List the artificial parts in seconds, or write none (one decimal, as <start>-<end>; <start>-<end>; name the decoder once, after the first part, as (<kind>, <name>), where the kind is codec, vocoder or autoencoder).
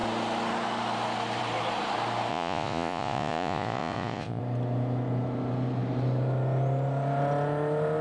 2.3-4.4 (vocoder, Vocos)